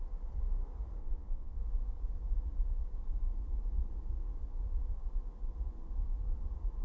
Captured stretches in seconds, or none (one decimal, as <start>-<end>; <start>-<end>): 0.0-1.0; 1.6-6.8